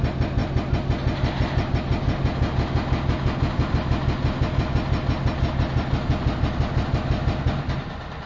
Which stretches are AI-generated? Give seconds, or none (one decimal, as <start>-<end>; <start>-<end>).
none